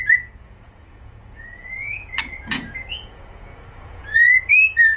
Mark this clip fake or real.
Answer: fake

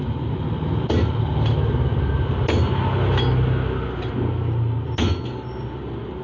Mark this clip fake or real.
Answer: real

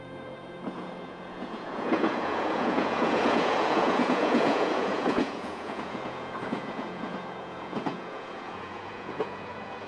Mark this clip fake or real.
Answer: fake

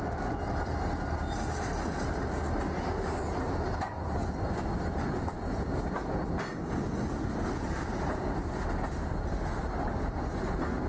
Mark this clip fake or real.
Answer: real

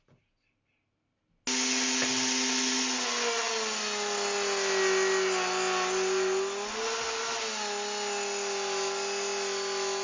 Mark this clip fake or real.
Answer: real